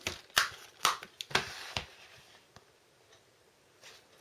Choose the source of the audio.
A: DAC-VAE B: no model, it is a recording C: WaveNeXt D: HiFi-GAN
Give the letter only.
B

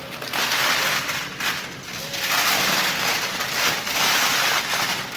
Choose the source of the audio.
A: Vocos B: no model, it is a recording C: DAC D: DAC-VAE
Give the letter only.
B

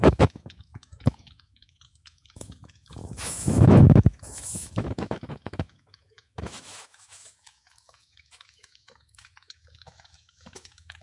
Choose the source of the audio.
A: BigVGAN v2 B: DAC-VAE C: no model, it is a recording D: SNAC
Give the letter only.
B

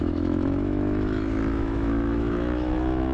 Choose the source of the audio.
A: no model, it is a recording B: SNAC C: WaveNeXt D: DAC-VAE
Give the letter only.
D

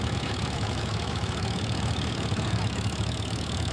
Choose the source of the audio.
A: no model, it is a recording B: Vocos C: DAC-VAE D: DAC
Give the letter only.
C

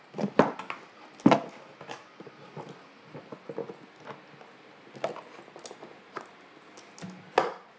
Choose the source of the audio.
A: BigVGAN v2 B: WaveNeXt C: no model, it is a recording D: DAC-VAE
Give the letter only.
C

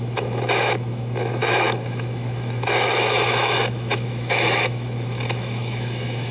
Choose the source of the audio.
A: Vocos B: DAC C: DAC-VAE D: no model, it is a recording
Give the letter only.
C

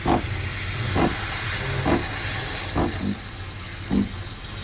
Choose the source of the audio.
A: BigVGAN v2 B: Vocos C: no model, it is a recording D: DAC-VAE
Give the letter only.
C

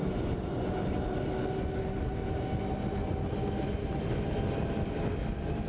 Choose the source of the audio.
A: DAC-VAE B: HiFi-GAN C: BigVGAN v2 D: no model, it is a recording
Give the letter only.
D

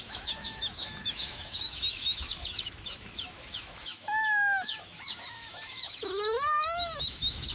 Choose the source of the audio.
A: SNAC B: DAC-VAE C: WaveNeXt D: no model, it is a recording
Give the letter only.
B